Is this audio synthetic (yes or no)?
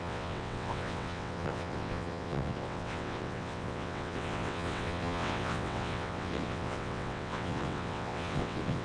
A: yes